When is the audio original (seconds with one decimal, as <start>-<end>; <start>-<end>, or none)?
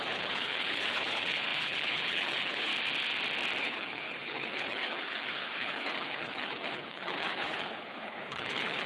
2.7-3.6